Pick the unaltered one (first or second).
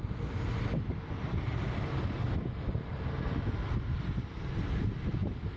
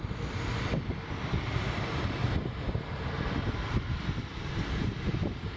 first